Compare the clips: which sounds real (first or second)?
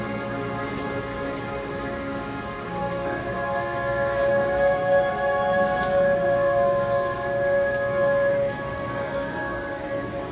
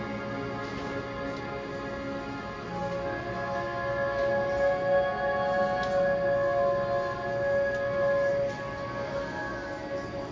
second